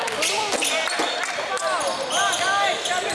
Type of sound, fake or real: real